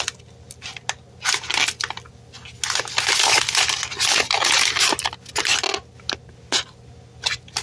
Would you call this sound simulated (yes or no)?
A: no